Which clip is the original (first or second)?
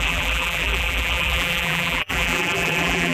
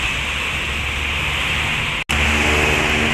second